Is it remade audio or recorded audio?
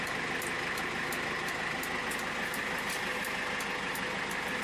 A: recorded